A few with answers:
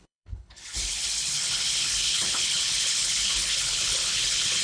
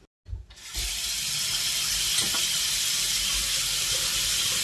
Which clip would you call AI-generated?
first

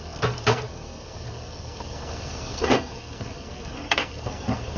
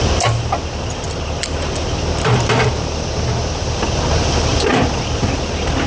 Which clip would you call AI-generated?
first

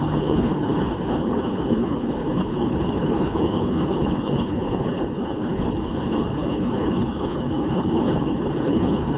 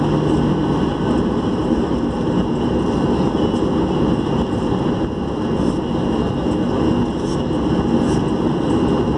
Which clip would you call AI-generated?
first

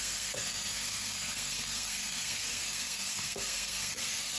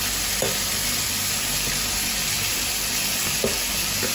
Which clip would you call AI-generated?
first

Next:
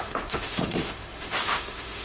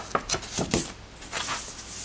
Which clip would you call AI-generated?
first